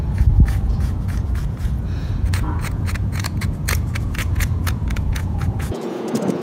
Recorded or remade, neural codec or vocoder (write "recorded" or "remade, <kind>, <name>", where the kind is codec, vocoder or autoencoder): remade, vocoder, Vocos